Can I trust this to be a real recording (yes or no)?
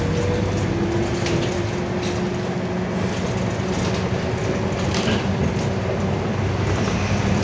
yes